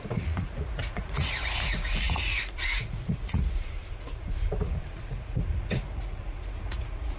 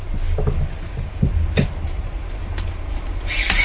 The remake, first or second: first